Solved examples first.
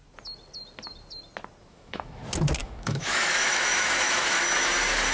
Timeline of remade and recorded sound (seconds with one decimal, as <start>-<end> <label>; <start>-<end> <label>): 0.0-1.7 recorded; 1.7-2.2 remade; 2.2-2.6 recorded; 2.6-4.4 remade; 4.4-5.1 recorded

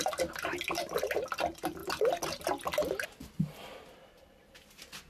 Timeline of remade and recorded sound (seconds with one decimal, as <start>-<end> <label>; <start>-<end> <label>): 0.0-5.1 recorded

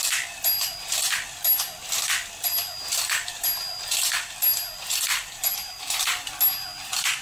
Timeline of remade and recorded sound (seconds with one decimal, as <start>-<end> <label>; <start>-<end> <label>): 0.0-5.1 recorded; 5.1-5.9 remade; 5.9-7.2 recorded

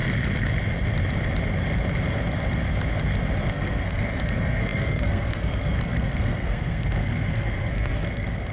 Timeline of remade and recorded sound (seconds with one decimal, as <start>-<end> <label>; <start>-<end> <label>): 0.0-3.5 recorded; 3.5-8.5 remade